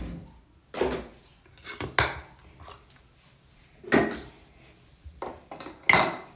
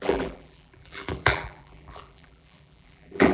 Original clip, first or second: first